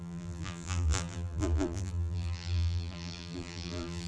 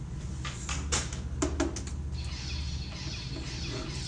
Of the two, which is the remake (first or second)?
first